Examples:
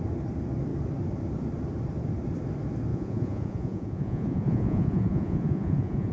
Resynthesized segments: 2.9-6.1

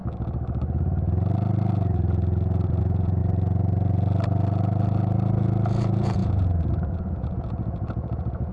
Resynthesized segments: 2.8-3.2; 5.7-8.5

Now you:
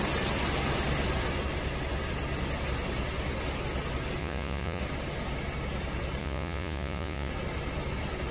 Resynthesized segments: 4.2-4.8; 6.2-7.3

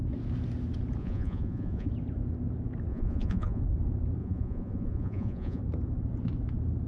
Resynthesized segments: 1.0-1.9; 2.9-3.6; 4.2-5.6

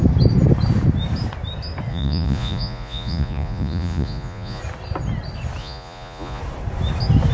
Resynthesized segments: 1.9-4.6; 5.6-6.4

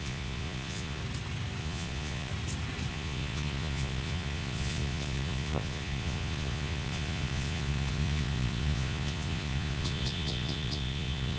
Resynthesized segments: 0.0-1.0; 1.6-2.3; 2.9-11.4